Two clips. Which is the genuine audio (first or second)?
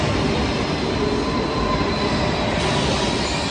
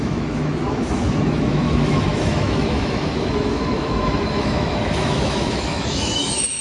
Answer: first